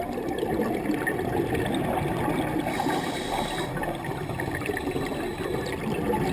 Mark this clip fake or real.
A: real